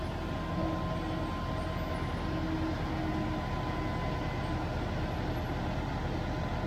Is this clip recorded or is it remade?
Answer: recorded